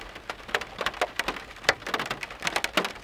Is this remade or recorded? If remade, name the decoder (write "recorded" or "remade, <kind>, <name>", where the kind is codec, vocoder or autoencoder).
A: recorded